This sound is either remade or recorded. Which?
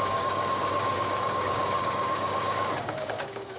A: remade